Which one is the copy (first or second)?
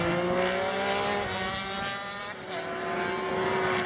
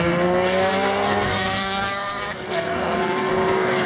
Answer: second